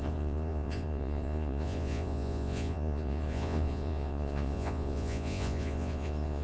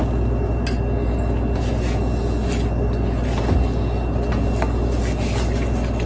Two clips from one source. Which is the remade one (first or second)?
first